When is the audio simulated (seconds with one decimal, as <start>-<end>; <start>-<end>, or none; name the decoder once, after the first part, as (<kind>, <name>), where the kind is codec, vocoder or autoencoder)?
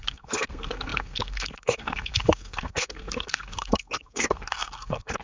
0.0-5.2 (codec, SNAC)